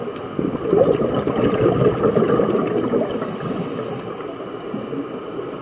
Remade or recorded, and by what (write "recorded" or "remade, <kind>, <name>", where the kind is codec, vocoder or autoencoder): recorded